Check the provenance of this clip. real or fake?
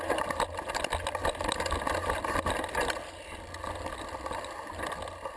real